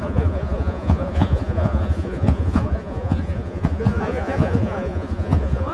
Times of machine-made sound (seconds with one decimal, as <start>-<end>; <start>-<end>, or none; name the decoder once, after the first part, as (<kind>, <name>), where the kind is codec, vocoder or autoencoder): 0.0-5.7 (vocoder, Vocos)